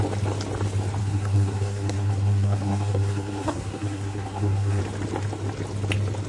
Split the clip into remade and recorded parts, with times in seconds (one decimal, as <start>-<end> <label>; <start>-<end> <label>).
0.0-1.0 recorded; 1.0-4.8 remade; 4.8-6.3 recorded